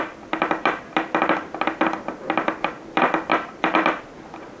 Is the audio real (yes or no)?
yes